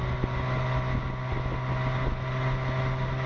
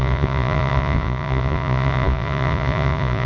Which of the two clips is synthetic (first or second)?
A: second